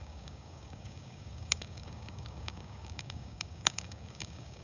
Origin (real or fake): fake